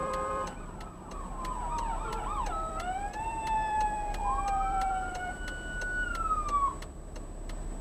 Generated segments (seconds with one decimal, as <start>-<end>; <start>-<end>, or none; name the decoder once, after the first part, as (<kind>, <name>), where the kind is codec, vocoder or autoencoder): 0.0-1.0 (vocoder, BigVGAN v2); 2.1-5.3